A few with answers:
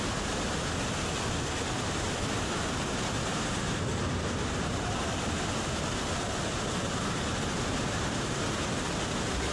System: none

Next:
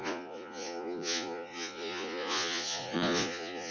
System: vocoder, Vocos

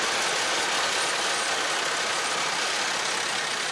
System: none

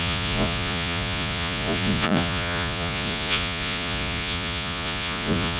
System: vocoder, Vocos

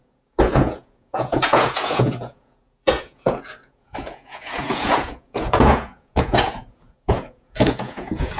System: vocoder, Vocos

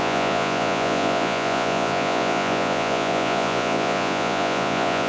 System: vocoder, Vocos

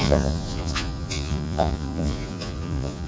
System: vocoder, Vocos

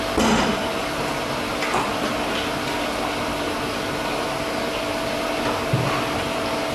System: none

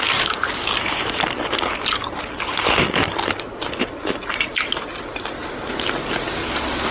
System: none